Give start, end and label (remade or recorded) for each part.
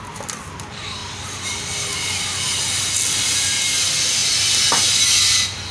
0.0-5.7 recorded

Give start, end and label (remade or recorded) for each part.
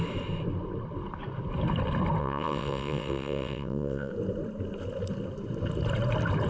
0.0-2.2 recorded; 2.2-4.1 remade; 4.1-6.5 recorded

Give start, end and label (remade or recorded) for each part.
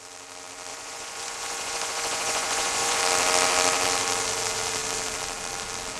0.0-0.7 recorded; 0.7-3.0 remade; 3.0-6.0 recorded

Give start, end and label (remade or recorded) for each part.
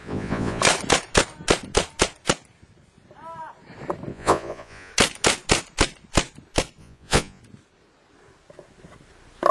0.0-0.6 remade; 0.6-4.1 recorded; 4.1-4.9 remade; 4.9-6.8 recorded; 6.8-7.4 remade; 7.4-9.5 recorded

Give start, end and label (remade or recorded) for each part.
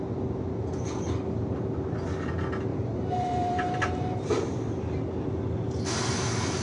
0.0-2.7 recorded; 2.7-4.6 remade; 4.6-6.6 recorded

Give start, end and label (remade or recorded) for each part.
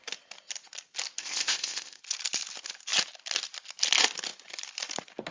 0.0-1.2 recorded; 1.2-2.0 remade; 2.0-5.3 recorded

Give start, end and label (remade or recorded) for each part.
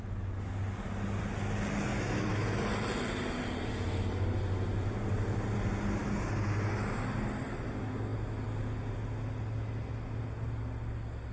0.0-1.9 recorded; 1.9-2.6 remade; 2.6-11.3 recorded